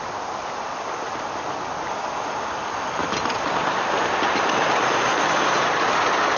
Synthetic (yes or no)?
no